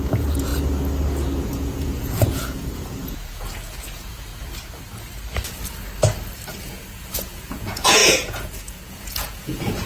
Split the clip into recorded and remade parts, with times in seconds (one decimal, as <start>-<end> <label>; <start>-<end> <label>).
0.0-0.5 remade; 0.5-1.5 recorded; 1.5-4.3 remade; 4.3-6.6 recorded; 6.6-9.9 remade